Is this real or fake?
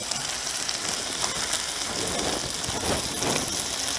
real